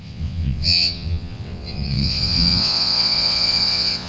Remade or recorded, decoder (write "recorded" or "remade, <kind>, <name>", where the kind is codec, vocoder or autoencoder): remade, vocoder, WaveNeXt